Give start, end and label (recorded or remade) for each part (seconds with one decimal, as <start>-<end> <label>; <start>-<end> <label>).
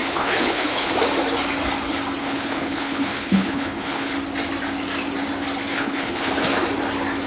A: 0.0-0.9 remade; 0.9-2.2 recorded; 2.2-4.1 remade; 4.1-5.7 recorded; 5.7-6.3 remade; 6.3-7.3 recorded